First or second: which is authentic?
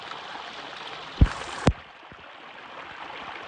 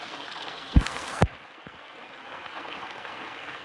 first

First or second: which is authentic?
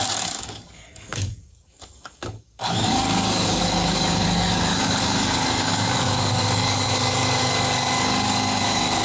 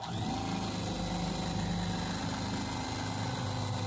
second